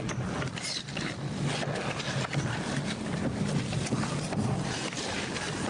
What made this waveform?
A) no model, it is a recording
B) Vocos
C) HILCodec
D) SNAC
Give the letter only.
A